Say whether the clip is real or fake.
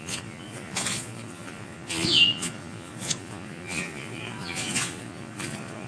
fake